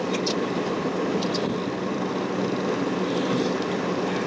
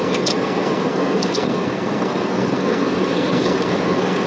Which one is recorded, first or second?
first